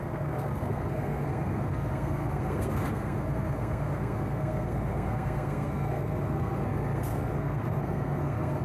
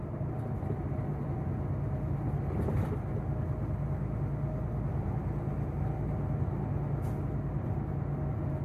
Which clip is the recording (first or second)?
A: second